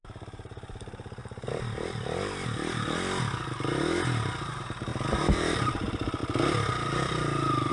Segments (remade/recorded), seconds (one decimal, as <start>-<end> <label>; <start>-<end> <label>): 0.0-1.2 remade; 1.2-4.5 recorded; 4.5-6.2 remade; 6.2-7.7 recorded